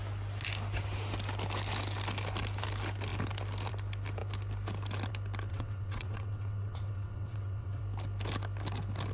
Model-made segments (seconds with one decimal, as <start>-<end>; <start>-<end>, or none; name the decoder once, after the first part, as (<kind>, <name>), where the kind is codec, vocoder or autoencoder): 5.5-7.8 (vocoder, WaveNeXt)